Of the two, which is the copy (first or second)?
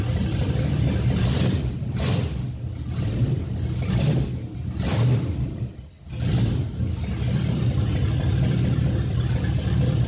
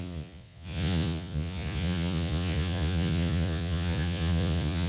second